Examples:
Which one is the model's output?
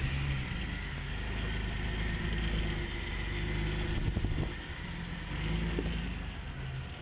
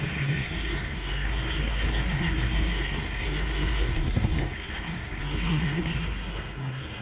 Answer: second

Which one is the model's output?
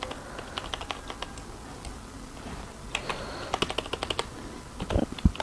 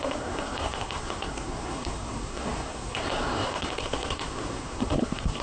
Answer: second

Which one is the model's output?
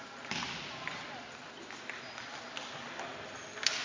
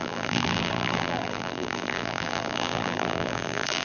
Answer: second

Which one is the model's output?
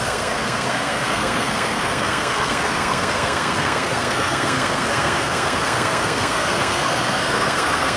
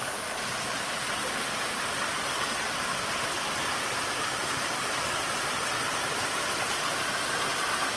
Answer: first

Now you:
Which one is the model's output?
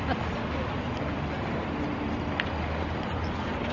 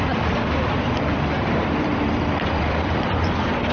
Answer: second